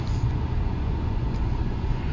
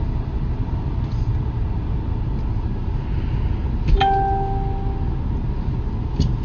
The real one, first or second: second